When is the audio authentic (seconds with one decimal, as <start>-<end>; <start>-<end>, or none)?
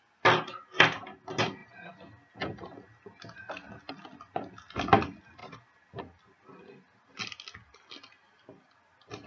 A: 0.0-5.4; 6.0-9.3